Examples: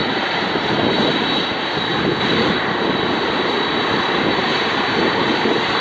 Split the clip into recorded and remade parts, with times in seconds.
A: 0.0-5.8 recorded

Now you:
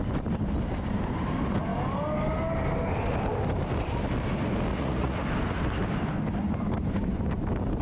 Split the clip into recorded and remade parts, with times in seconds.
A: 0.0-4.7 recorded; 4.7-5.2 remade; 5.2-7.8 recorded